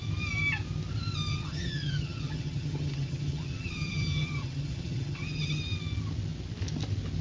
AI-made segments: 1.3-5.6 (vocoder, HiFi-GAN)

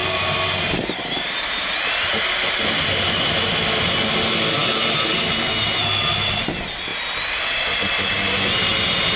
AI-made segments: none

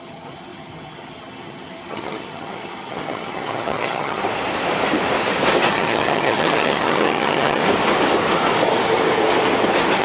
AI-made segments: 0.0-4.2 (vocoder, HiFi-GAN); 5.7-7.6

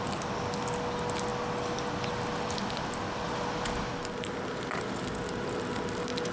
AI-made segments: none

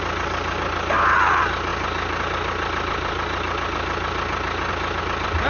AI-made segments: none

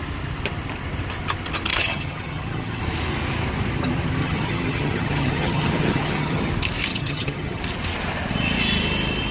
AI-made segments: 1.7-2.8 (vocoder, HiFi-GAN); 4.2-6.5; 6.9-7.6

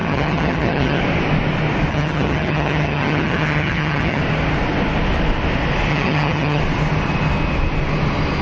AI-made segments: 0.0-1.0 (vocoder, HiFi-GAN); 1.9-4.2; 5.9-6.6

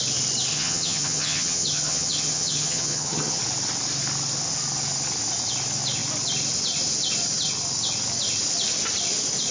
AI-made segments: 0.5-3.4 (vocoder, HiFi-GAN)